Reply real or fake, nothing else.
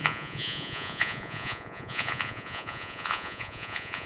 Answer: fake